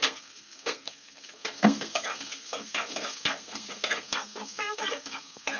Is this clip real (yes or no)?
no